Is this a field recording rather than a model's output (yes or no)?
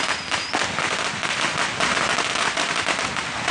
yes